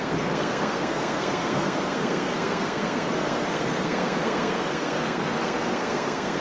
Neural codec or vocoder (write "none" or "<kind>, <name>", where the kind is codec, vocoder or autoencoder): codec, SNAC